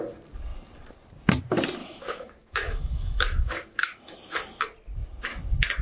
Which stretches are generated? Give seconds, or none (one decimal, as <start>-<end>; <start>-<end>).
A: 1.8-4.0